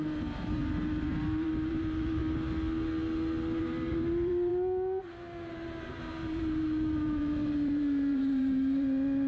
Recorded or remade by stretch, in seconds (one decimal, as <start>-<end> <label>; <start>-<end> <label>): 0.0-2.2 remade; 2.2-3.6 recorded; 3.6-4.5 remade; 4.5-5.0 recorded; 5.0-9.3 remade